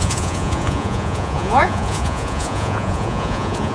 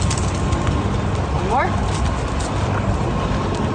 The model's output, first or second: first